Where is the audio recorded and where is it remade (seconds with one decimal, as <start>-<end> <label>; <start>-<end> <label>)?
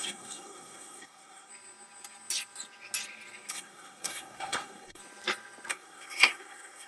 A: 0.0-1.5 remade; 1.5-3.5 recorded; 3.5-5.0 remade; 5.0-5.7 recorded; 5.7-6.9 remade